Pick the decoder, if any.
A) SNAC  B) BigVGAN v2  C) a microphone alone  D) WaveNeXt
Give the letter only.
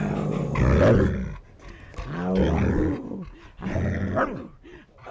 C